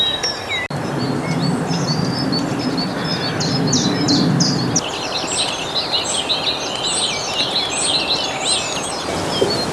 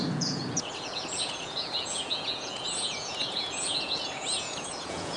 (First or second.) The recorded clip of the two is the first